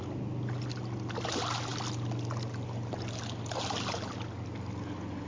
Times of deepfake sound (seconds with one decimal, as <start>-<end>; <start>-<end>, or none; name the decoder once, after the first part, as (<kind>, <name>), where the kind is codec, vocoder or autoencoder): none